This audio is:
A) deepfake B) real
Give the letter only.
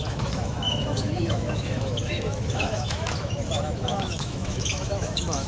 A